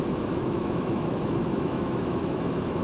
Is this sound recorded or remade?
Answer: remade